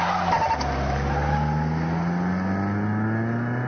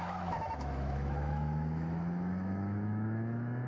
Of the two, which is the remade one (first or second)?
second